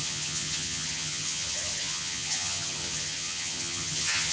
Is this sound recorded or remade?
remade